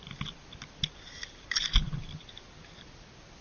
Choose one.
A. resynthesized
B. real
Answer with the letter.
B